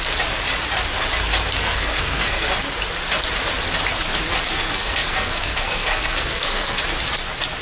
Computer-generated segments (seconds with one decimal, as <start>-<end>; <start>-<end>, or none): 1.6-2.5; 4.5-6.8